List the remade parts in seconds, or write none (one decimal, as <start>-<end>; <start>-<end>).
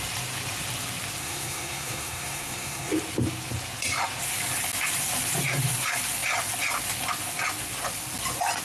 1.2-2.9